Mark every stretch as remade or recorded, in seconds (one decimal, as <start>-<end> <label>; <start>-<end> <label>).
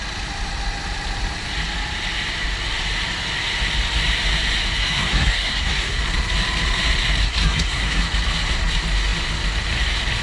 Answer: 0.0-4.8 recorded; 4.8-6.0 remade; 6.0-7.2 recorded; 7.2-8.0 remade; 8.0-10.2 recorded